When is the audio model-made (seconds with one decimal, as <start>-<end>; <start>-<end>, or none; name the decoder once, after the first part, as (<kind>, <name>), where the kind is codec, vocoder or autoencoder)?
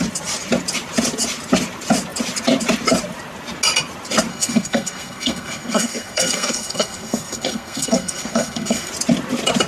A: 4.3-8.9 (codec, SNAC)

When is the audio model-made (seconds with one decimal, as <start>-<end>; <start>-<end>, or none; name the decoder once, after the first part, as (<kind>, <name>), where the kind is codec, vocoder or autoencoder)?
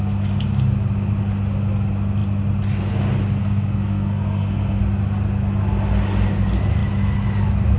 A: 3.4-4.8 (codec, SNAC)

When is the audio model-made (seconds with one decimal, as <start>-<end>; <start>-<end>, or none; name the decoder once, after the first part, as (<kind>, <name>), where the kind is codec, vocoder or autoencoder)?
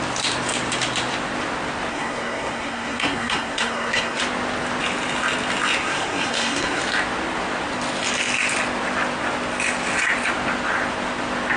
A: 1.9-4.2 (codec, SNAC); 5.8-6.8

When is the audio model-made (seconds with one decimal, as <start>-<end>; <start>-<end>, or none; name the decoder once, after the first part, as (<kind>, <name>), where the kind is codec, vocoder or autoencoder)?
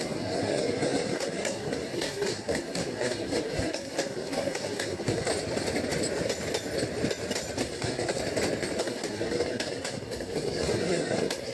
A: 0.0-5.3 (codec, SNAC); 7.6-8.2; 8.8-11.5